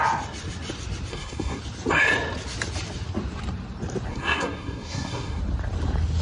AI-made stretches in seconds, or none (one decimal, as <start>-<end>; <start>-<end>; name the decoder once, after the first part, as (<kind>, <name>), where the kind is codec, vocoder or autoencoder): 1.1-1.6 (codec, SNAC); 4.1-5.4